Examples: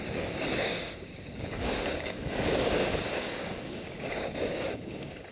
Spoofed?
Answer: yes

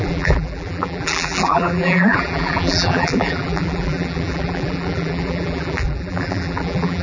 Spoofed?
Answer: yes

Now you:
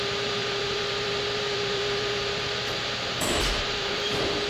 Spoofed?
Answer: yes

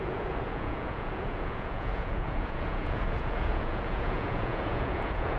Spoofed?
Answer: yes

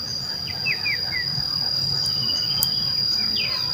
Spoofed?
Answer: no